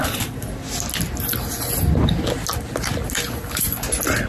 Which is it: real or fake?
real